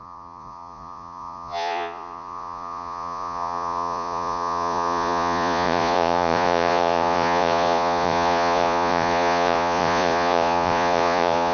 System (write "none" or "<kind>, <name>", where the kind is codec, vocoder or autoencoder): vocoder, Vocos